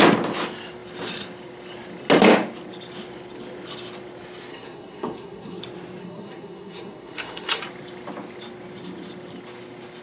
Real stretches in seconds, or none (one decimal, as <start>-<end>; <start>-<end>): 0.0-4.5; 5.6-6.0; 7.6-10.0